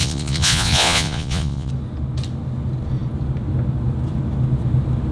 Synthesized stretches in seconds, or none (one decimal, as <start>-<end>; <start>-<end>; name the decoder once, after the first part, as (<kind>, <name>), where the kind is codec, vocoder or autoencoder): 0.0-1.7 (vocoder, Vocos)